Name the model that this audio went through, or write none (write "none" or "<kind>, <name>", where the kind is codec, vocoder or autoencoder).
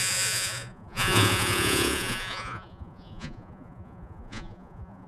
vocoder, Vocos